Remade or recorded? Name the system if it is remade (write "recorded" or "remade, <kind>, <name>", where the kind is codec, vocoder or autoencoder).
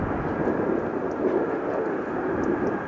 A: recorded